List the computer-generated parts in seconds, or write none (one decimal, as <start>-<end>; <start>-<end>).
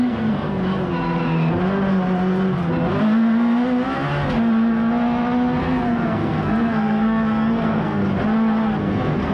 0.0-0.6; 5.6-8.0; 8.8-9.3